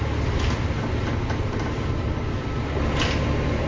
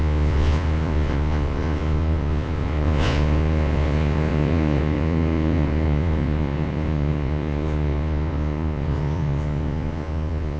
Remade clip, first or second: second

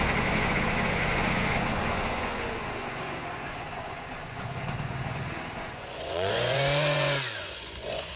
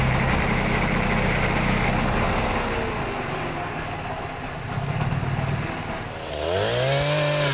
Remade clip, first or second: first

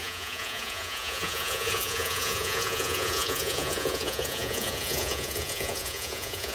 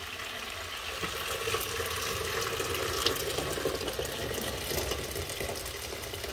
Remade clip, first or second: first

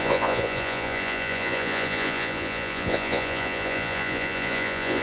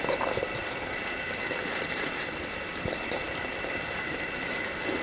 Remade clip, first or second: first